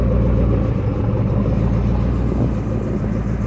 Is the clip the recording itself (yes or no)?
yes